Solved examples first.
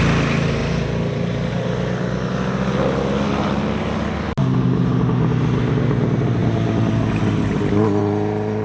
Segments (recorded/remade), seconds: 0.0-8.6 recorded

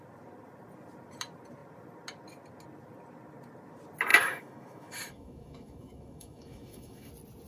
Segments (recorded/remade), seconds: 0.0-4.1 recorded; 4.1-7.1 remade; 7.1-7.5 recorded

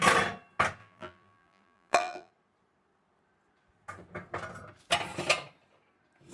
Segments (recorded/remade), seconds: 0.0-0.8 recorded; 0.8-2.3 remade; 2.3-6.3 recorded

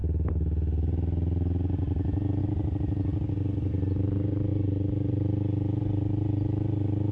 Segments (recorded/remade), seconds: 0.0-7.1 recorded